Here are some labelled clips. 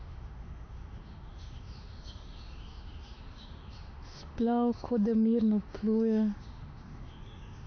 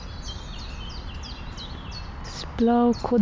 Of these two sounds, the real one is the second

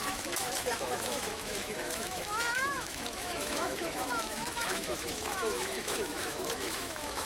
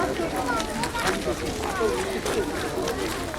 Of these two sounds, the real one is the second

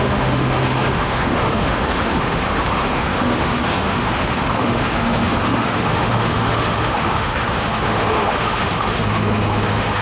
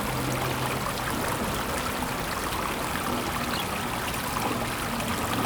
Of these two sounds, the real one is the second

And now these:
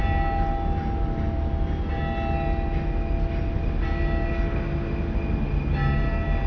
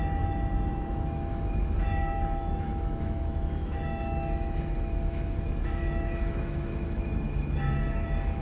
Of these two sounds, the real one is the first